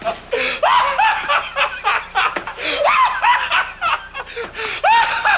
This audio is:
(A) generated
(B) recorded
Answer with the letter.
B